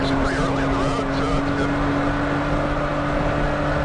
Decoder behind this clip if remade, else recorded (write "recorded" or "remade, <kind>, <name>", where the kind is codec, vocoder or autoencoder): recorded